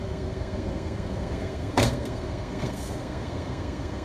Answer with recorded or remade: remade